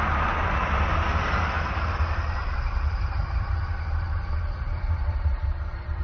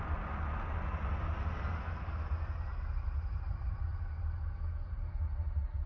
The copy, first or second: first